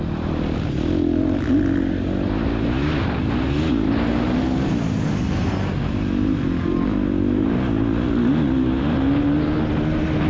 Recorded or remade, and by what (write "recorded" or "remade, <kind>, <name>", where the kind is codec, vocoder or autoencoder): recorded